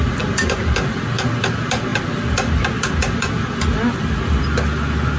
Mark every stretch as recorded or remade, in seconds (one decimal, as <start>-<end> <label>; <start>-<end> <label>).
0.0-5.2 recorded